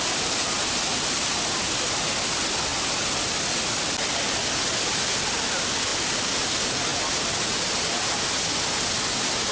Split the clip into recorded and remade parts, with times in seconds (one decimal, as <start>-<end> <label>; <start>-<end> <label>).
0.0-9.5 recorded